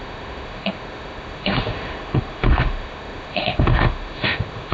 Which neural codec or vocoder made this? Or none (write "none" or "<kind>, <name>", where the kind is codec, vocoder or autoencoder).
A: autoencoder, DAC-VAE